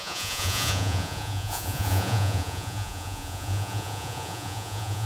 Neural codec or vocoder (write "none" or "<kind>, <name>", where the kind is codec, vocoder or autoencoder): vocoder, Vocos